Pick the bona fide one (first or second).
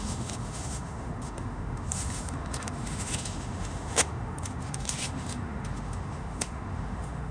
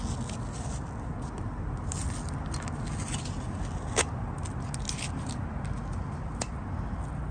second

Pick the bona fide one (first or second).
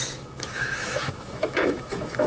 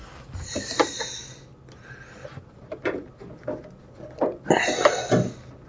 second